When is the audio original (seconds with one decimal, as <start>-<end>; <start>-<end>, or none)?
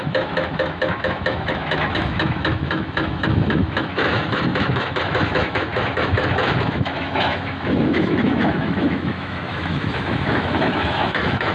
none